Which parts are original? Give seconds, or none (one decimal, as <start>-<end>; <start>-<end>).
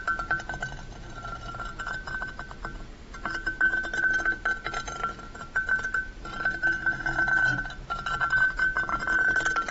0.0-9.7